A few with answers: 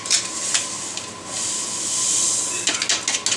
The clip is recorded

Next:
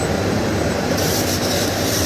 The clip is remade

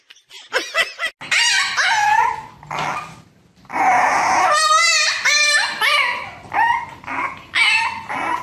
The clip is recorded